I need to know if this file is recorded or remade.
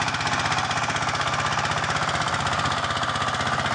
recorded